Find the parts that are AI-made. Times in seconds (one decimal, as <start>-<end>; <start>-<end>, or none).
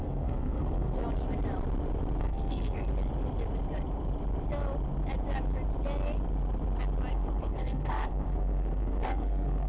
0.0-1.0; 2.2-2.9; 7.1-9.7